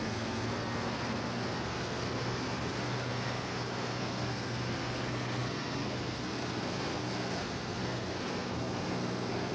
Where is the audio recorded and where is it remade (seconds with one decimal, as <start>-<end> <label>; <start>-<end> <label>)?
0.0-9.5 remade